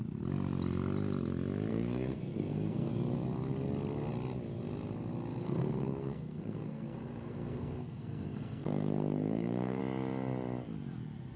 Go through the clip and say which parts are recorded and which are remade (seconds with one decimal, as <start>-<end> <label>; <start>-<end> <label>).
0.0-1.7 recorded; 1.7-2.9 remade; 2.9-5.3 recorded; 5.3-9.8 remade; 9.8-11.4 recorded